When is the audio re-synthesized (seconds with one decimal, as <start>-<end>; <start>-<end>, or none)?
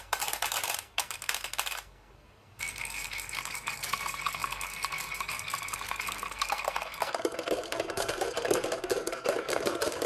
0.0-10.1